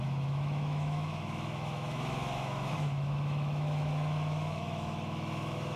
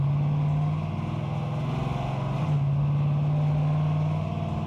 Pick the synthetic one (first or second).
first